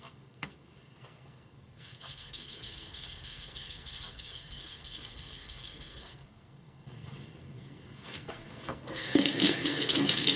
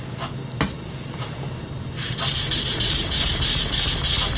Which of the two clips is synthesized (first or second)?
first